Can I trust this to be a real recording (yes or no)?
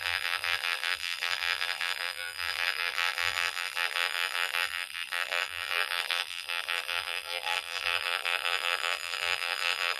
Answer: no